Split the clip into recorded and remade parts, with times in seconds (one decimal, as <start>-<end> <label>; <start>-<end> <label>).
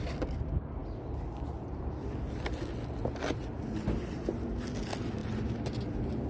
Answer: 0.0-6.3 recorded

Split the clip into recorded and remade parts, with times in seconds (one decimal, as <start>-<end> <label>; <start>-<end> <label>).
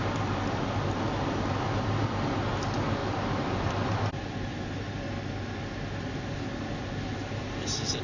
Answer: 0.0-8.0 recorded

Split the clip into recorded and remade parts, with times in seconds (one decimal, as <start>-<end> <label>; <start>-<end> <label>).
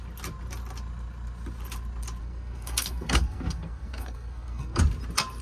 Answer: 0.0-2.2 recorded; 2.2-4.8 remade; 4.8-5.4 recorded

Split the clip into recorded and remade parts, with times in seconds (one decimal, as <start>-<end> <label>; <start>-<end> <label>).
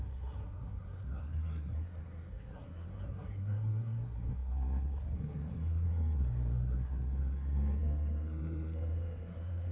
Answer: 0.0-9.7 remade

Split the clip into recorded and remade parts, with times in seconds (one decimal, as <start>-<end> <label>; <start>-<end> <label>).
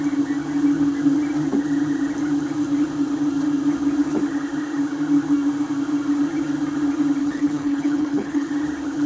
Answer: 0.0-7.2 recorded; 7.2-8.5 remade; 8.5-9.1 recorded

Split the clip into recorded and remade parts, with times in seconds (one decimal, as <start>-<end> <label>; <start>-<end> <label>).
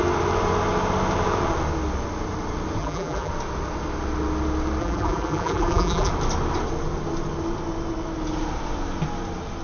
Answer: 0.0-2.8 recorded; 2.8-3.3 remade; 3.3-4.8 recorded; 4.8-6.1 remade; 6.1-9.6 recorded